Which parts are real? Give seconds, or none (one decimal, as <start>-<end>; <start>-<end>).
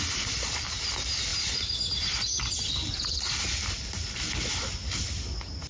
0.0-5.7